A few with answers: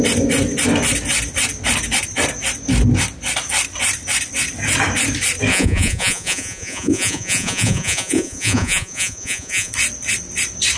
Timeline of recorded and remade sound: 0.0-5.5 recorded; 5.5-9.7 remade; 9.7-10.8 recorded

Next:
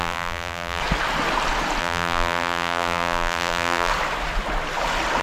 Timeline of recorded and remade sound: 0.0-0.8 remade; 0.8-1.8 recorded; 1.8-3.9 remade; 3.9-5.2 recorded

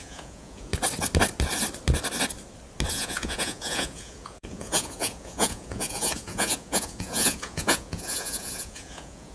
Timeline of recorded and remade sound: 0.0-0.7 remade; 0.7-2.9 recorded; 2.9-9.3 remade

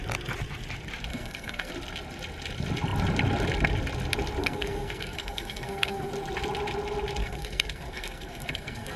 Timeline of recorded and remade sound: 0.0-1.1 recorded; 1.1-1.7 remade; 1.7-4.4 recorded; 4.4-6.1 remade; 6.1-7.2 recorded; 7.2-9.0 remade